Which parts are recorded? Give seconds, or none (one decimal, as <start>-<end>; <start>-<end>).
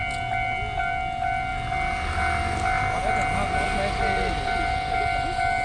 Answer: 0.0-5.6